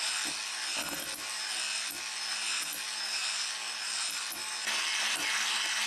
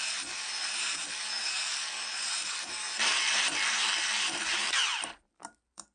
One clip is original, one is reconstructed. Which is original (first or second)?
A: first